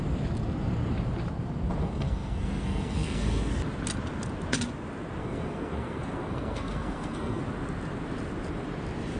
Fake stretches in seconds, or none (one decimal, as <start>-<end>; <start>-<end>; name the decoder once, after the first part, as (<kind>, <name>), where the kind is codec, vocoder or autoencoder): 1.8-3.5 (codec, SNAC); 5.2-7.4